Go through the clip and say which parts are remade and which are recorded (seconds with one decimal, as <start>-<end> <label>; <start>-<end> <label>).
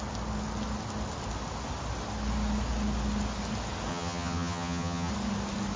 0.0-3.9 recorded; 3.9-5.1 remade; 5.1-5.8 recorded